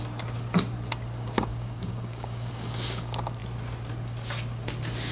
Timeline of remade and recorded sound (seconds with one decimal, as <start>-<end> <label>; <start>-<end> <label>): 0.0-1.5 recorded; 1.5-2.5 remade; 2.5-5.1 recorded